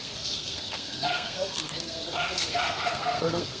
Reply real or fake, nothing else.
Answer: fake